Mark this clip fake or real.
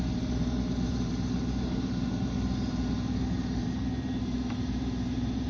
fake